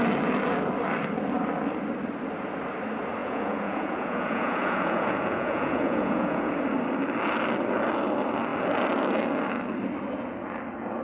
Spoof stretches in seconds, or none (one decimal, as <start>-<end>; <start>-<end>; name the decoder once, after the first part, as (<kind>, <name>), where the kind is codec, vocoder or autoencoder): 3.2-6.5 (vocoder, Vocos)